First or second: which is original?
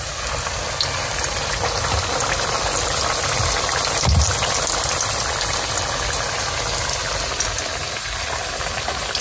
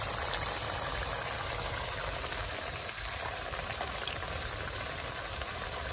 first